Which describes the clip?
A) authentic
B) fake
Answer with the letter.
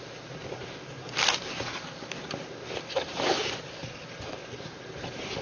A